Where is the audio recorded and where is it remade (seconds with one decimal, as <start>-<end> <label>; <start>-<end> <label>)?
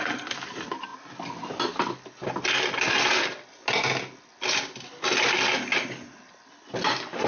0.0-7.3 recorded